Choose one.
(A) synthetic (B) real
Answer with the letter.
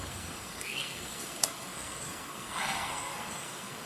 A